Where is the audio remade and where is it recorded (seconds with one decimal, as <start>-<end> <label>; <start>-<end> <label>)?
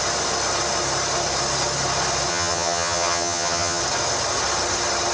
0.0-2.3 recorded; 2.3-3.8 remade; 3.8-5.1 recorded